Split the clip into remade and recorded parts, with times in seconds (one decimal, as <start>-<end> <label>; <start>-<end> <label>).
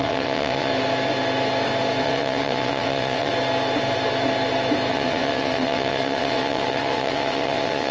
0.0-0.7 remade; 0.7-2.0 recorded; 2.0-3.3 remade; 3.3-4.9 recorded; 4.9-7.9 remade